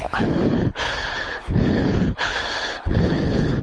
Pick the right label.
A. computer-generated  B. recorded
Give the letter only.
A